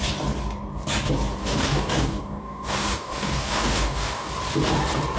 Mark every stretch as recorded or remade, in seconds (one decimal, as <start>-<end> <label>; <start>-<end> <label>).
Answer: 0.0-1.4 recorded; 1.4-4.3 remade; 4.3-5.2 recorded